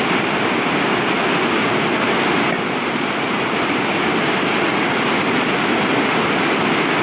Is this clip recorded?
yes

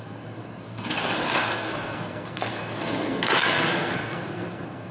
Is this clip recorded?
no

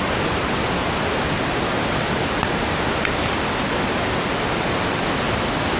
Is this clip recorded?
yes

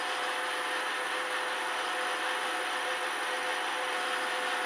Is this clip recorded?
yes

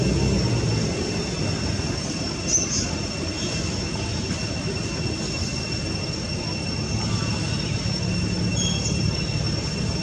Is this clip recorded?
yes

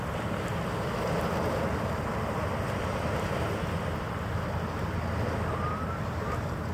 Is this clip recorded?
yes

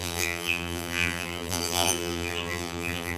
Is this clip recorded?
no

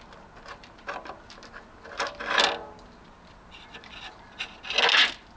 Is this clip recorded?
yes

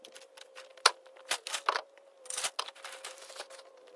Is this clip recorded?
yes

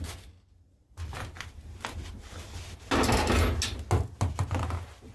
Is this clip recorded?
yes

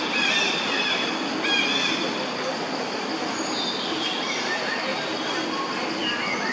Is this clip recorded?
yes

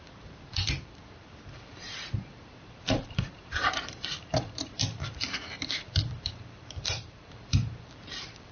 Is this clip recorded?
no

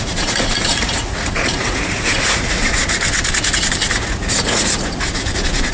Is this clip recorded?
no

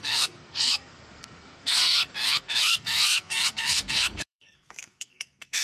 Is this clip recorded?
no